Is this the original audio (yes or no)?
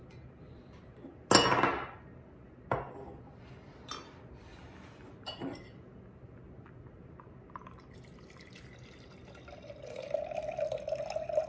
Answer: yes